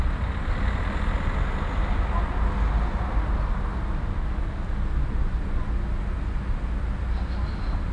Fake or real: real